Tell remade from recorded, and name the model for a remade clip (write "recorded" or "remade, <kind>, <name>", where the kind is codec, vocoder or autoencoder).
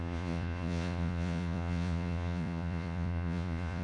remade, vocoder, Vocos